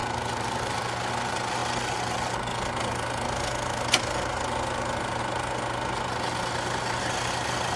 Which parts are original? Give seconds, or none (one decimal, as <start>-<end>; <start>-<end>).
0.0-7.8